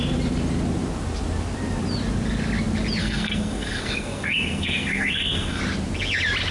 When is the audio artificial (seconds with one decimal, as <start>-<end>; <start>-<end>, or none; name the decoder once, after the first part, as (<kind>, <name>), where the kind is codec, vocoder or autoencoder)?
3.0-5.6 (codec, SNAC)